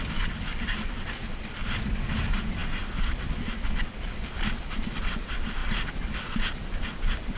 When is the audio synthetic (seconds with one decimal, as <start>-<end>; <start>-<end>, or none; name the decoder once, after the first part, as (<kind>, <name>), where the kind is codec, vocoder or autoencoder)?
none